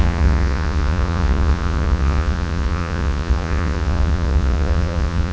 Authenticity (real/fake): fake